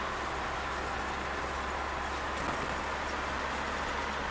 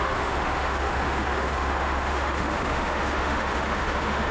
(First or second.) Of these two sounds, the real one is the first